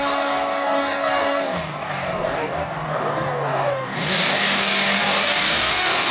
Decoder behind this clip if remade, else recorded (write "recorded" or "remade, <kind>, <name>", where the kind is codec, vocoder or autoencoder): remade, codec, DAC